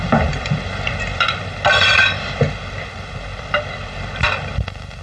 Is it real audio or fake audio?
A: fake